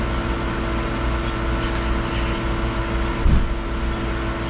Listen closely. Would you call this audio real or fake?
real